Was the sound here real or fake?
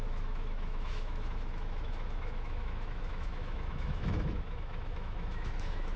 fake